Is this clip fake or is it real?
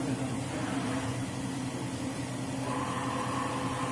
fake